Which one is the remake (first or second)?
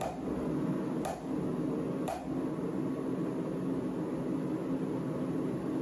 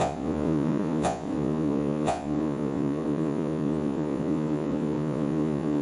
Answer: second